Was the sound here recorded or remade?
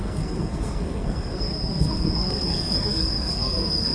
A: remade